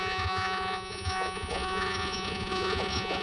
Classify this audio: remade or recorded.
remade